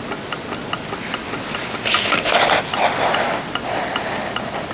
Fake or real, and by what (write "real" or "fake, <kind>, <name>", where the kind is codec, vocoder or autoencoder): real